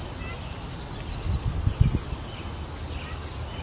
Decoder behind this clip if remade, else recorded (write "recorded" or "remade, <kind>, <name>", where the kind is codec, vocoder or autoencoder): recorded